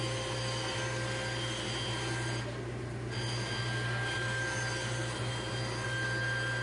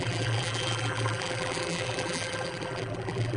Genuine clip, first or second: first